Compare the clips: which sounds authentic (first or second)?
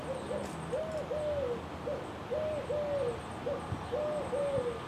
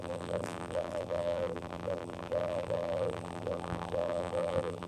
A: first